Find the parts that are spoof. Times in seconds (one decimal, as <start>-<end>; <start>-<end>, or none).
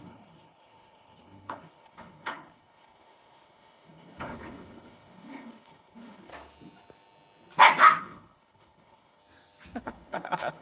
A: 0.0-6.3; 8.0-9.2; 9.8-10.6